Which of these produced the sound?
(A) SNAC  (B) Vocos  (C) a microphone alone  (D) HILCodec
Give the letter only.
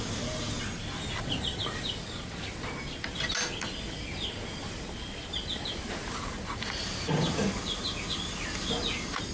C